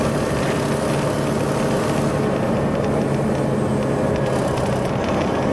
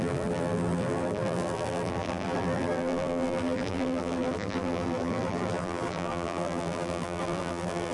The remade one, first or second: second